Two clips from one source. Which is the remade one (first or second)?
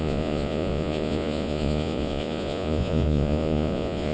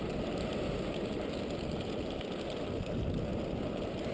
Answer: first